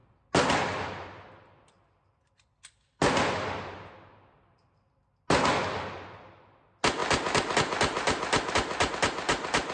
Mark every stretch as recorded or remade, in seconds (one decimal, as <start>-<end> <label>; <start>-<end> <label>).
0.0-9.7 recorded